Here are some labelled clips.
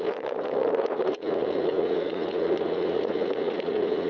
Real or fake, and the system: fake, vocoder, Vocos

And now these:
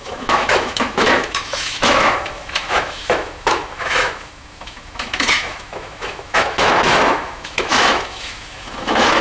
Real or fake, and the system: fake, autoencoder, DAC-VAE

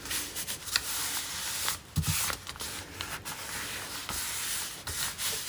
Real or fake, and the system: real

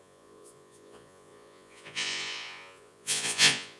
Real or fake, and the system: fake, vocoder, Vocos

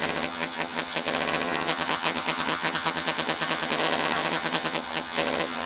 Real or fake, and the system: fake, vocoder, HiFi-GAN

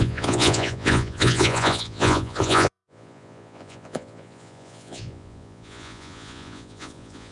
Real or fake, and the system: fake, vocoder, Vocos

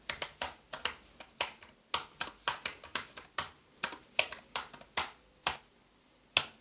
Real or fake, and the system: real